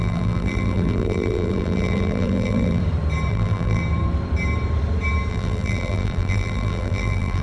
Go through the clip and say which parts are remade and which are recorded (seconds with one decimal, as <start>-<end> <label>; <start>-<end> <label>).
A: 0.0-2.8 remade; 2.8-3.3 recorded; 3.3-3.8 remade; 3.8-5.3 recorded; 5.3-7.4 remade